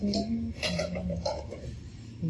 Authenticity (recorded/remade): recorded